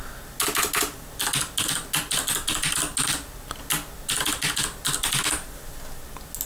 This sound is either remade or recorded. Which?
recorded